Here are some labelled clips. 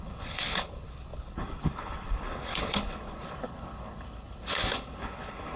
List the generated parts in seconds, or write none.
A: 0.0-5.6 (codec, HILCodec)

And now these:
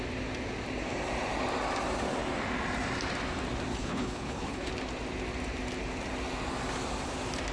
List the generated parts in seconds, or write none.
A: 3.7-4.7 (codec, HILCodec)

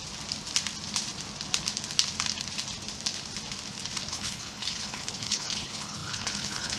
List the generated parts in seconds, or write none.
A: 4.1-6.8 (codec, HILCodec)

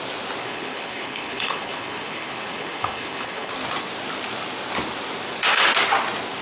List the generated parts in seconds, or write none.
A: 0.4-3.5 (codec, HILCodec)

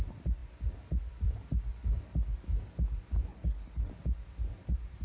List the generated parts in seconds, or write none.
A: 3.3-3.9 (codec, HILCodec)